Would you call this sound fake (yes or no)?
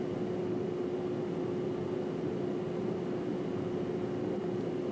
no